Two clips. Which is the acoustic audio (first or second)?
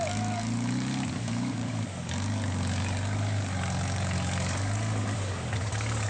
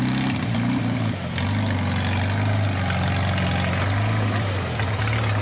second